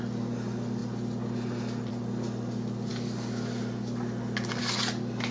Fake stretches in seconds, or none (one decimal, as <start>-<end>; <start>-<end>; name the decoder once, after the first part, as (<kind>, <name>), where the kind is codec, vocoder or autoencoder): none